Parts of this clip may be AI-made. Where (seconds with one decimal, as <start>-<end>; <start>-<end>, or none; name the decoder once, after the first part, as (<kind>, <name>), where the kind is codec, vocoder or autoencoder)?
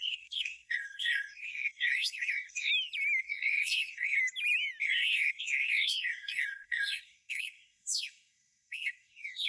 0.0-2.7 (codec, SNAC); 3.2-4.2; 4.8-9.5